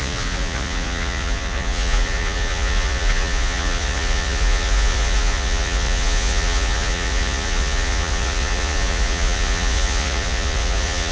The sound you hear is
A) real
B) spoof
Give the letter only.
B